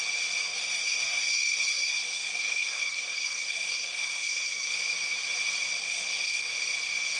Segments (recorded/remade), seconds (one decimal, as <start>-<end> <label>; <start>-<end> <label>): 0.0-0.4 recorded; 0.4-4.7 remade; 4.7-5.8 recorded; 5.8-6.4 remade; 6.4-7.2 recorded